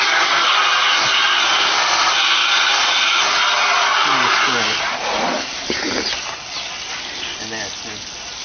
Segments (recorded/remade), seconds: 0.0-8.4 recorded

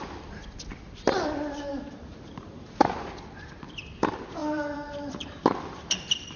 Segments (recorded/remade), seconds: 0.0-1.7 recorded; 1.7-3.1 remade; 3.1-4.4 recorded; 4.4-6.0 remade; 6.0-6.4 recorded

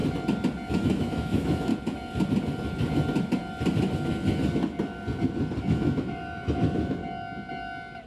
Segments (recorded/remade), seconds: 0.0-0.7 recorded; 0.7-1.7 remade; 1.7-5.6 recorded; 5.6-7.0 remade; 7.0-8.1 recorded

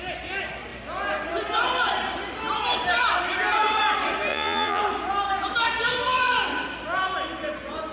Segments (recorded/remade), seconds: 0.0-4.3 recorded; 4.3-4.8 remade; 4.8-7.9 recorded

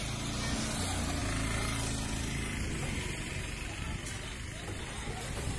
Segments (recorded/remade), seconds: 0.0-5.6 recorded

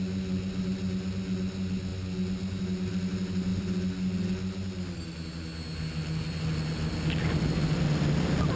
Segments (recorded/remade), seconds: 0.0-8.6 recorded

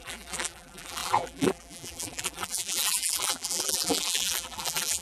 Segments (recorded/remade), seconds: 0.0-5.0 remade